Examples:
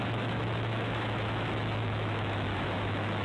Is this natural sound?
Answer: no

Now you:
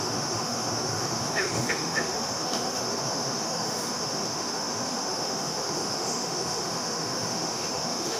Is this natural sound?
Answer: no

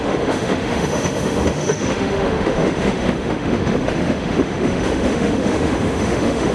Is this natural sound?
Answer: no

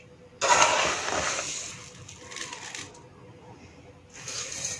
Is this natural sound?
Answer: yes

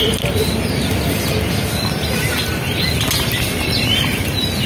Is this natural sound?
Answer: yes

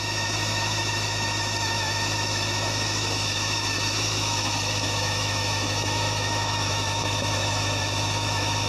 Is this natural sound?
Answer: no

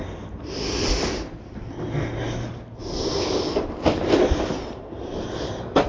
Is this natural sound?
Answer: yes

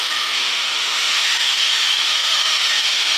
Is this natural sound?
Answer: no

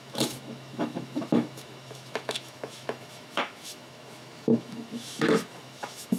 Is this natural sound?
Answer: no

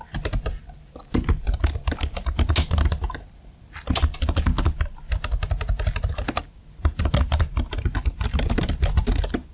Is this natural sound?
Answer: yes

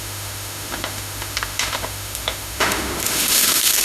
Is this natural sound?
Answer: no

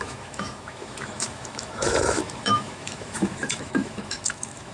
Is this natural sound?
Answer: no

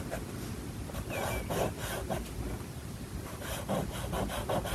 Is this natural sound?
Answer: yes